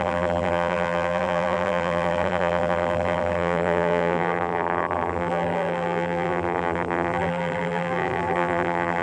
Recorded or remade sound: remade